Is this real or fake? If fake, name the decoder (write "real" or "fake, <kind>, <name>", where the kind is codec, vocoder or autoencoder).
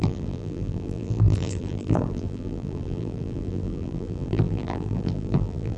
fake, vocoder, BigVGAN v2